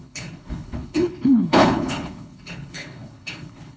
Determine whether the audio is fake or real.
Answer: fake